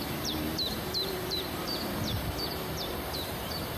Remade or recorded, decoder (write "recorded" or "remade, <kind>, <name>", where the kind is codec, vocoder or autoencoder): remade, vocoder, BigVGAN v2